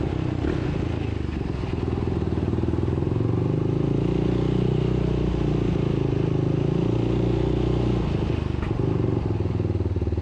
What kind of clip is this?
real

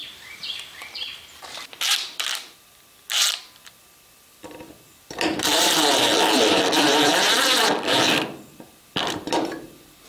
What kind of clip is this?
fake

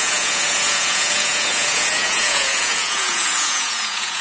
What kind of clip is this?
fake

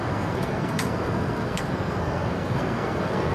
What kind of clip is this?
fake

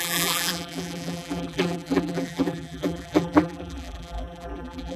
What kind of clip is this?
fake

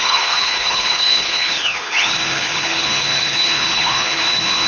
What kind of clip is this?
fake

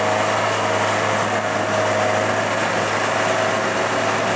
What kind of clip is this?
real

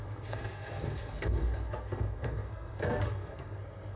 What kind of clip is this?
fake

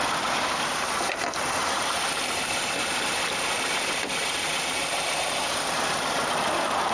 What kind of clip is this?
real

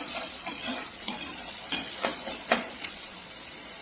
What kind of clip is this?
fake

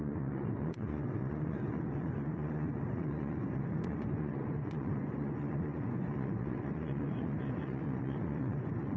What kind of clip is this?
fake